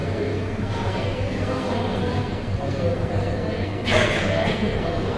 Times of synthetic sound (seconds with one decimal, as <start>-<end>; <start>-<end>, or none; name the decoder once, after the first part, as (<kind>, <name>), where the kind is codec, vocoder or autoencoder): 0.0-5.2 (codec, SNAC)